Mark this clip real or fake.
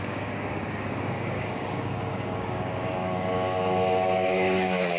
fake